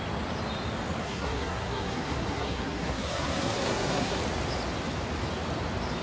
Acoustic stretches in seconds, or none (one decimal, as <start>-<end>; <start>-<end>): 0.0-1.0; 4.2-6.0